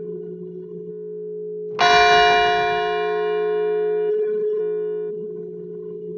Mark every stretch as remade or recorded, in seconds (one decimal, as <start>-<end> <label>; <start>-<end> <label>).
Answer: 0.0-0.9 remade; 0.9-4.1 recorded; 4.1-4.6 remade; 4.6-5.1 recorded; 5.1-6.2 remade